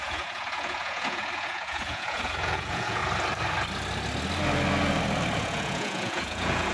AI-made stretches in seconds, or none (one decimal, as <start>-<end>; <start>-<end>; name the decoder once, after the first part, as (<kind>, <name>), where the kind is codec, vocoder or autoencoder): 0.0-3.0 (vocoder, Vocos); 5.4-6.7